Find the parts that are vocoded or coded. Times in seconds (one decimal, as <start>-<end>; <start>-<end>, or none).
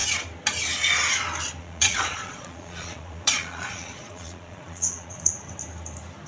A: 1.6-5.4